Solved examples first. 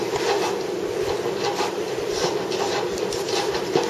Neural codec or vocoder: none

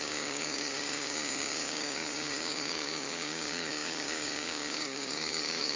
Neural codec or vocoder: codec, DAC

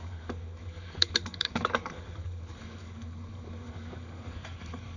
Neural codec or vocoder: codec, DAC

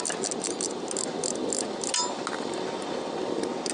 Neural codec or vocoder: none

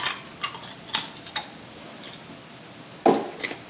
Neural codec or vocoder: none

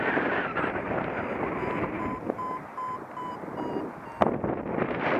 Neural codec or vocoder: none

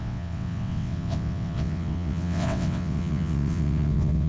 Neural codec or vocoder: vocoder, WaveNeXt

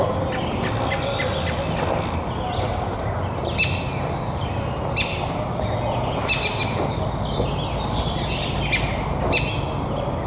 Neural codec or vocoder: none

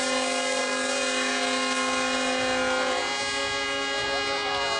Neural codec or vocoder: none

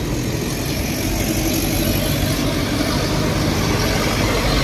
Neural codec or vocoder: none